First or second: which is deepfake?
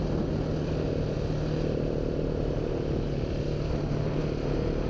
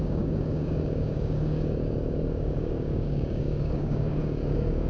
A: second